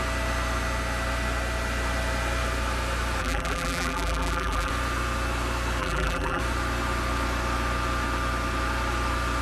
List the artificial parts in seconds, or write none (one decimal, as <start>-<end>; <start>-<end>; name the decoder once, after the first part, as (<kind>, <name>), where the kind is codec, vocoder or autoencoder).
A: 3.2-4.7 (vocoder, BigVGAN v2); 5.8-6.4